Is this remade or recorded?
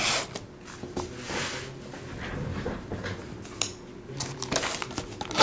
recorded